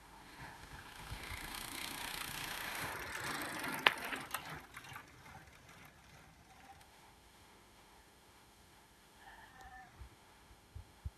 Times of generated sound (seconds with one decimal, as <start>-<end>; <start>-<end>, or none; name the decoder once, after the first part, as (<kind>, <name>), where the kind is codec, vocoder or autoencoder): 0.0-2.9 (autoencoder, DAC-VAE); 6.8-9.5; 10.0-11.2